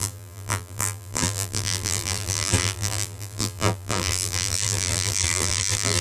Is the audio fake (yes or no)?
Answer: yes